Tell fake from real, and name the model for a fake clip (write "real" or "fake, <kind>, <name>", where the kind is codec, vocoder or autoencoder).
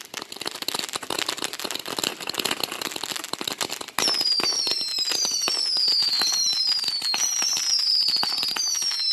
real